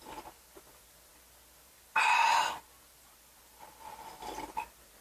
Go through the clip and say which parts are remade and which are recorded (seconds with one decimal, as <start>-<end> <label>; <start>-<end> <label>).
0.0-5.0 recorded

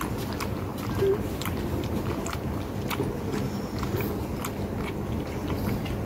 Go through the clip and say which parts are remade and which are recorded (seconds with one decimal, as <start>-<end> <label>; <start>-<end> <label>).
0.0-0.7 recorded; 0.7-2.4 remade; 2.4-6.1 recorded

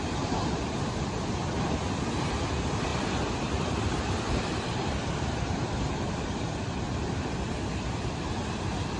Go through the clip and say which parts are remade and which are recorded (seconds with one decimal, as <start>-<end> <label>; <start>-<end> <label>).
0.0-2.9 recorded; 2.9-7.3 remade; 7.3-9.0 recorded

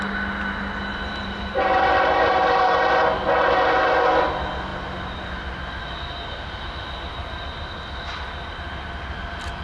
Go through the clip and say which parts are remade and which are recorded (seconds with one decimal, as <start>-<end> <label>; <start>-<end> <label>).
0.0-0.9 recorded; 0.9-2.9 remade; 2.9-9.6 recorded

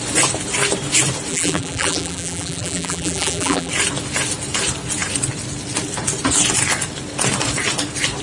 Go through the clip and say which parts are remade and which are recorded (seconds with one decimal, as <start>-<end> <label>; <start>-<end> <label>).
0.0-1.3 recorded; 1.3-3.7 remade; 3.7-8.2 recorded